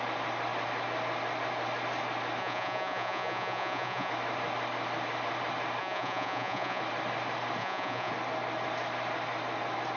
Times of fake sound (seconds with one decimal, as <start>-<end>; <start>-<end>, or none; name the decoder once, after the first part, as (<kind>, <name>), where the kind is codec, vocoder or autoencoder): 2.4-4.1 (vocoder, Vocos); 5.8-6.8; 7.6-8.1